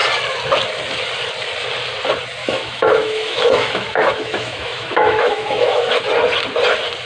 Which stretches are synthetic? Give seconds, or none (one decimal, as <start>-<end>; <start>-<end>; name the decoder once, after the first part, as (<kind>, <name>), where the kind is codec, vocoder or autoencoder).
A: 2.4-6.0 (autoencoder, DAC-VAE)